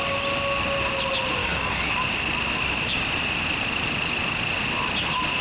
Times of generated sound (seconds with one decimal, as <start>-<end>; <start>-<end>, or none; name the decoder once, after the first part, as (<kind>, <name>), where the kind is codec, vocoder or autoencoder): 1.4-1.9 (codec, DAC)